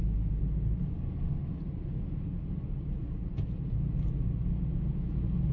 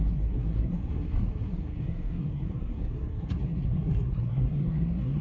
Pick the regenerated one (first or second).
second